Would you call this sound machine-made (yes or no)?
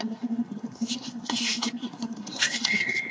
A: yes